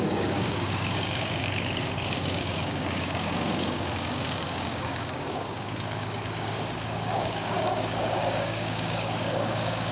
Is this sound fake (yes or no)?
yes